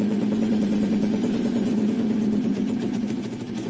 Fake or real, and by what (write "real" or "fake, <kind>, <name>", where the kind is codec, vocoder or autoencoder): fake, vocoder, Vocos